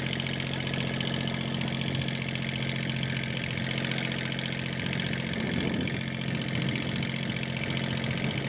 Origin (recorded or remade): recorded